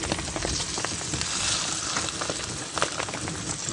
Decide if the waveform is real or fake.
real